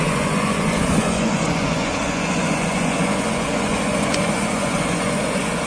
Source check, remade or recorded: remade